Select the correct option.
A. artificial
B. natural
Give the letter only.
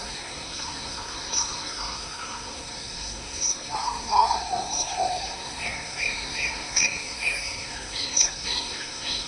A